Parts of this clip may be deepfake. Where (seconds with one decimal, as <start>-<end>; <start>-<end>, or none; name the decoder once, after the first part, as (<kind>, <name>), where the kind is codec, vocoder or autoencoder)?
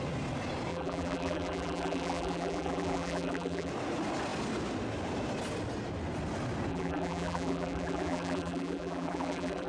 0.7-3.7 (vocoder, BigVGAN v2); 6.7-9.7